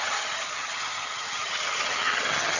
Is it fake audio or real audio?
fake